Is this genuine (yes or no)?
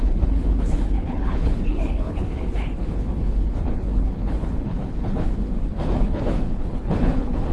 no